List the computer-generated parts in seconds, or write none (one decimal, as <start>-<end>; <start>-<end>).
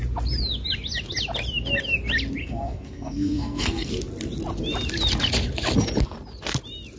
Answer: 2.4-3.9